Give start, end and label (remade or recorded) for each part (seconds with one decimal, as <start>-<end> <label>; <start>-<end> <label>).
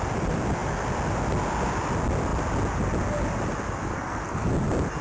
0.0-3.9 recorded; 3.9-4.5 remade; 4.5-5.0 recorded